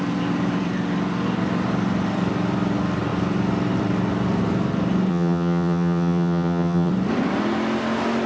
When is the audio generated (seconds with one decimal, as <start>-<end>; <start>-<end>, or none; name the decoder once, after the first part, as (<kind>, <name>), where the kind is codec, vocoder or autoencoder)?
5.1-6.9 (vocoder, HiFi-GAN)

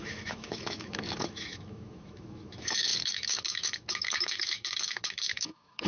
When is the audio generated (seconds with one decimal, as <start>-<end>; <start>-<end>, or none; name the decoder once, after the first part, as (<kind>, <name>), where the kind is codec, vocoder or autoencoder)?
0.0-5.9 (autoencoder, DAC-VAE)

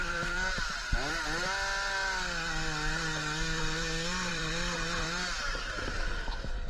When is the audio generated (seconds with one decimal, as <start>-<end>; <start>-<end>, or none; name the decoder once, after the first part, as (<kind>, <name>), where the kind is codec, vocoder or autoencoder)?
0.0-1.2 (vocoder, BigVGAN v2); 4.3-6.7

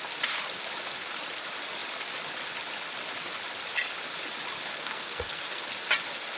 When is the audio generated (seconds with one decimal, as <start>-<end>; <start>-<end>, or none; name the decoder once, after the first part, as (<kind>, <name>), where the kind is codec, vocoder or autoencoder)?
4.7-5.6 (codec, SNAC)

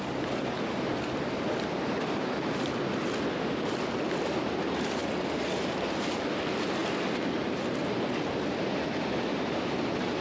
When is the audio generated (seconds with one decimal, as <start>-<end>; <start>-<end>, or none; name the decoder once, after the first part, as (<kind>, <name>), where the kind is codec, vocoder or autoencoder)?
none

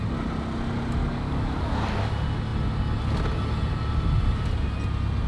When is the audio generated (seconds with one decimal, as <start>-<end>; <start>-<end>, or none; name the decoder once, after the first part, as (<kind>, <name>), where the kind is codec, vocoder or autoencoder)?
1.0-1.7 (codec, DAC)

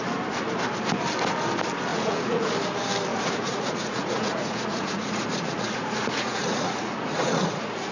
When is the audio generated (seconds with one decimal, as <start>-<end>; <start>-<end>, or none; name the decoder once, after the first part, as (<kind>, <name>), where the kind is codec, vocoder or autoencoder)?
1.9-2.5 (vocoder, Vocos); 3.1-7.9

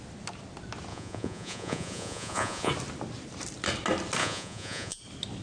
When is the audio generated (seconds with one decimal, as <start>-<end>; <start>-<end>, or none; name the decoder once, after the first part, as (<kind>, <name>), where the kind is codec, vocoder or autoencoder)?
0.9-2.7 (vocoder, Vocos); 4.2-5.0